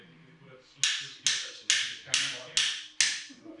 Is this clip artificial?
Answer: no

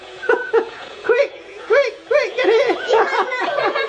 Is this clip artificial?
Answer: yes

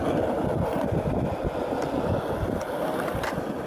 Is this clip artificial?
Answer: no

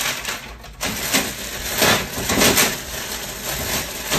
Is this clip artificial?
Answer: no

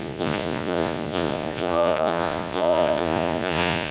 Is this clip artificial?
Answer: yes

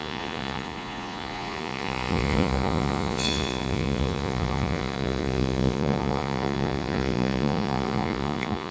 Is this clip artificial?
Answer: yes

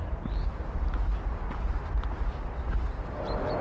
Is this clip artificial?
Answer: no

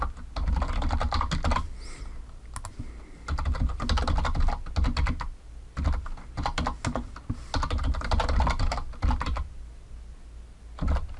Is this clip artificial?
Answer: no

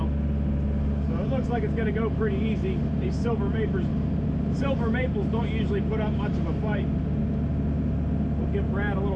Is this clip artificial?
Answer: no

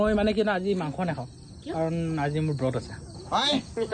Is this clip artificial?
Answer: no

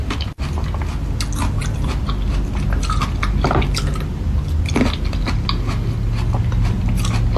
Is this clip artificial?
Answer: no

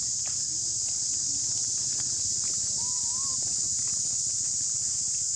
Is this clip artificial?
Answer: no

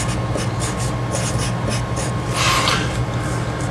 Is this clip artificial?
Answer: no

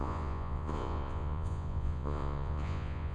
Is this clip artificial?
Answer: yes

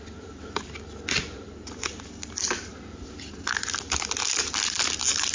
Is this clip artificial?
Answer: no